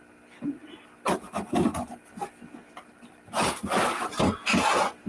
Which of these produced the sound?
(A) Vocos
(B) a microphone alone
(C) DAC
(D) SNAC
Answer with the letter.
B